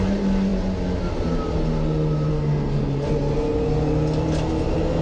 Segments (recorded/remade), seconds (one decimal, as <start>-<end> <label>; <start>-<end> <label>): 0.0-2.3 recorded; 2.3-2.8 remade; 2.8-5.0 recorded

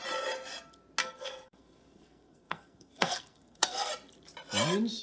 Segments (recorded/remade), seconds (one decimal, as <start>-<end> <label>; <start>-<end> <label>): 0.0-1.0 recorded; 1.0-3.9 remade; 3.9-5.0 recorded